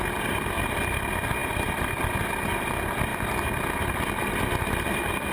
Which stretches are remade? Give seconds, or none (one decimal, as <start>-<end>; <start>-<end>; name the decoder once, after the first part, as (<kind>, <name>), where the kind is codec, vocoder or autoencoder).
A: none